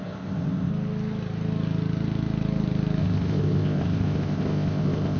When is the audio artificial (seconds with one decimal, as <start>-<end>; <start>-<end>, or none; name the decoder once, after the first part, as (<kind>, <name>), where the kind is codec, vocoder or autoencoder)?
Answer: 0.0-0.7 (codec, ZipCodec); 3.0-5.2